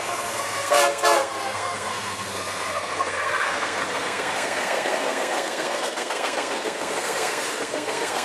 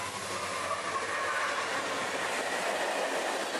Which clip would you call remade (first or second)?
first